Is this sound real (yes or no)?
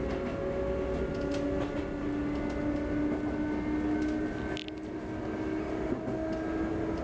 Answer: yes